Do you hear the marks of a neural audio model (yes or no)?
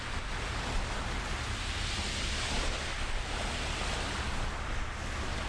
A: no